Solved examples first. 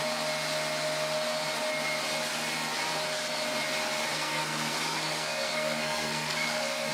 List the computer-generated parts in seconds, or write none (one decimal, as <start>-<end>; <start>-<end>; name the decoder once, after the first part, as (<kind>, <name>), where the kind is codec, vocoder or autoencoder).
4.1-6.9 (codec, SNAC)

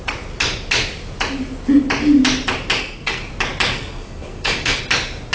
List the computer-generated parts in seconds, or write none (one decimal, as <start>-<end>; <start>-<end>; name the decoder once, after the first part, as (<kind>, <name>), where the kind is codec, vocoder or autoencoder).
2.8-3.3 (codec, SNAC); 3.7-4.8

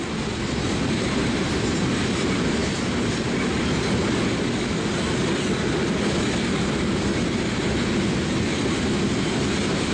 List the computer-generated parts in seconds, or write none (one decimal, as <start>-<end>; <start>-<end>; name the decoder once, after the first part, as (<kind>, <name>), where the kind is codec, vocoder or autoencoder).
none

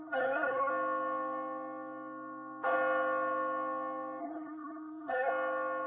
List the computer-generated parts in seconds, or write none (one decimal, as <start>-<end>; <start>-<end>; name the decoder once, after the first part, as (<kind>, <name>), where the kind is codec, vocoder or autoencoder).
0.0-0.7 (codec, SNAC); 4.2-5.3

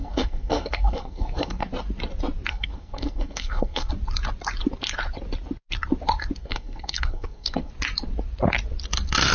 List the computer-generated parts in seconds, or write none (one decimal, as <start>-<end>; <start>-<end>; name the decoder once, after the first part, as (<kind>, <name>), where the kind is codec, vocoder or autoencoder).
0.0-1.7 (codec, SNAC); 2.5-3.9; 6.4-7.7

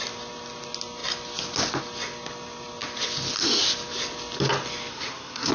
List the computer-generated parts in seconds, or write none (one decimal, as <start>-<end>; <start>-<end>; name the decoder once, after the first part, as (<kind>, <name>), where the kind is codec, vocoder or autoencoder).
4.9-5.5 (codec, SNAC)

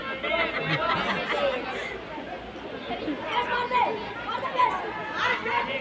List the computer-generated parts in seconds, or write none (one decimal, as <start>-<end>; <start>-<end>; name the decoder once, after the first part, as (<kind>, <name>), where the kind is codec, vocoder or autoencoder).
none